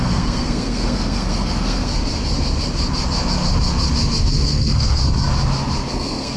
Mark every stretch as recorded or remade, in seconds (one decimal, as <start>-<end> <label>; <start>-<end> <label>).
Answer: 0.0-1.9 remade; 1.9-4.2 recorded; 4.2-5.0 remade; 5.0-5.9 recorded; 5.9-6.4 remade